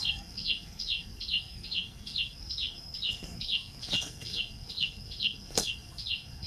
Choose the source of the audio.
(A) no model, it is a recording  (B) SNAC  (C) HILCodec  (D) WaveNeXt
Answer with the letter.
B